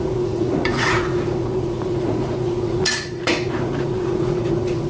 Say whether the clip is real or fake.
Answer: fake